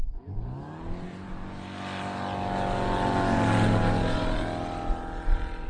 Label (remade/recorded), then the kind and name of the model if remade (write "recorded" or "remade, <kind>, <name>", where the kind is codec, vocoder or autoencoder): recorded